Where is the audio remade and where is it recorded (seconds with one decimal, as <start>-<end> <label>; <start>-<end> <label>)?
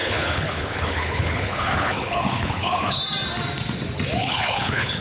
0.0-3.0 remade; 3.0-4.2 recorded; 4.2-5.0 remade